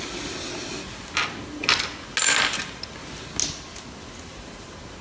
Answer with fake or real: real